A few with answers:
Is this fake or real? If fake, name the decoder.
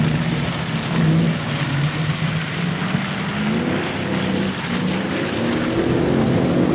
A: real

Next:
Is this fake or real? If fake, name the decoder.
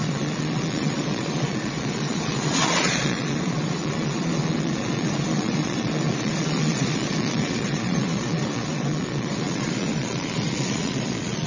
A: fake, vocoder, Vocos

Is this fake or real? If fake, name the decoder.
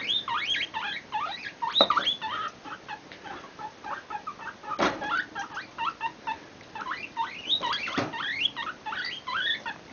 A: real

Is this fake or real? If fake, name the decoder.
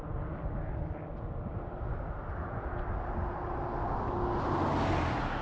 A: real